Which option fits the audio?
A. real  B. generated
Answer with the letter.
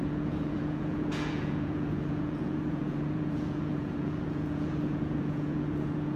B